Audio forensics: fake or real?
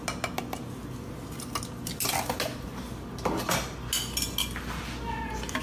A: real